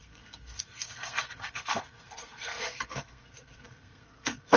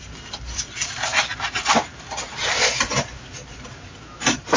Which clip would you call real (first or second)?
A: second